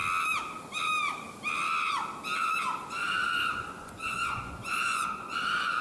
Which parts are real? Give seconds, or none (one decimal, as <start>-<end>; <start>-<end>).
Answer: 0.0-3.5